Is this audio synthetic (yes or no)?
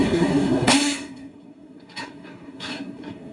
yes